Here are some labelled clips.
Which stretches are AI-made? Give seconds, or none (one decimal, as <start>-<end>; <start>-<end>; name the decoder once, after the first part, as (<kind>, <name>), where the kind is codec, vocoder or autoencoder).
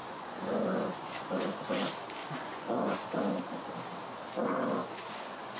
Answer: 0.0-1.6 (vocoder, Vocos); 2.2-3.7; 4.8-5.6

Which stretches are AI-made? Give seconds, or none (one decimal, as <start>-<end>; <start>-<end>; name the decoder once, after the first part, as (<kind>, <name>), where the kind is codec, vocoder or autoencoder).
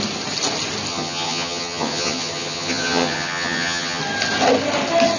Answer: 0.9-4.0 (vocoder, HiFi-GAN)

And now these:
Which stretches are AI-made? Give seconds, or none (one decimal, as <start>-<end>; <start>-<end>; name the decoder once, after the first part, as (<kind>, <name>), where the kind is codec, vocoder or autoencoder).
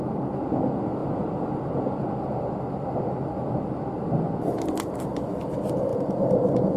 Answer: 5.9-6.8 (vocoder, BigVGAN v2)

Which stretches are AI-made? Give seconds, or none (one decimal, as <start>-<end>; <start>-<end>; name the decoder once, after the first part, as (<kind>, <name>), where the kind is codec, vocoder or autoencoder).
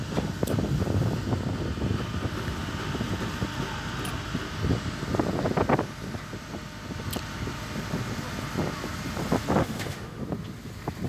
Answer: 9.6-10.2 (autoencoder, DAC-VAE)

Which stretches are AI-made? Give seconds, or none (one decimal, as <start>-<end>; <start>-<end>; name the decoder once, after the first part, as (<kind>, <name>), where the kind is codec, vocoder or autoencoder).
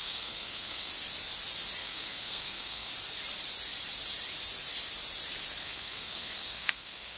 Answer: 0.0-0.9 (codec, SNAC); 1.8-2.9; 5.6-7.2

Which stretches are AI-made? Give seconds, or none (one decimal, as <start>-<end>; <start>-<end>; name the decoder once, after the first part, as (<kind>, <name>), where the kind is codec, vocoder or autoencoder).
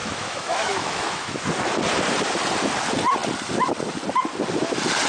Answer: 0.0-1.4 (autoencoder, DAC-VAE)